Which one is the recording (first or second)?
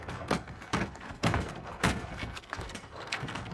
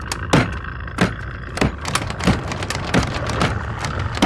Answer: second